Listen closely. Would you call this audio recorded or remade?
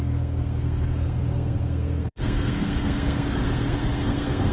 remade